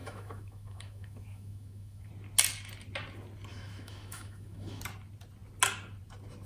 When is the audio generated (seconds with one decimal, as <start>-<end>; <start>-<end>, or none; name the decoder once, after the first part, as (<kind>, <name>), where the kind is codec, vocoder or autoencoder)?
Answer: 0.0-2.1 (autoencoder, DAC-VAE); 3.5-4.8